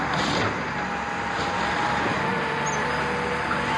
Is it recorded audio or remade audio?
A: recorded